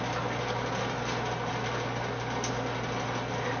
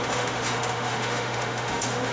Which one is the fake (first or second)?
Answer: second